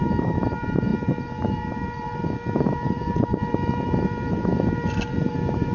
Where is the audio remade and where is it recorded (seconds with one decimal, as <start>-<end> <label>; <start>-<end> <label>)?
0.0-5.7 remade